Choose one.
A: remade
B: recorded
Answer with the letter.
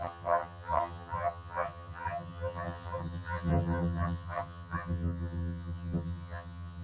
A